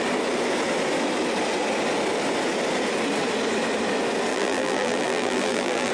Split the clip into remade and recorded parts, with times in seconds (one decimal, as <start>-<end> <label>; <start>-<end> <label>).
0.0-4.3 recorded; 4.3-5.9 remade